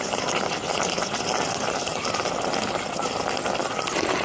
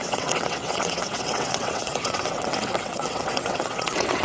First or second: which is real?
first